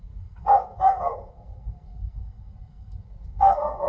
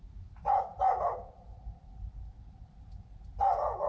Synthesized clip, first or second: first